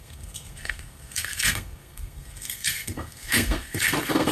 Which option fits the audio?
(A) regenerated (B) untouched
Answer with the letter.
A